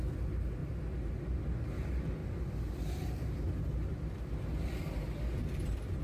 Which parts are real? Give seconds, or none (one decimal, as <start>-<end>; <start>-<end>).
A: 0.0-6.0